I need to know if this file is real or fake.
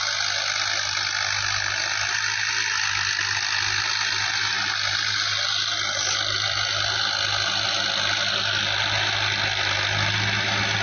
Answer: real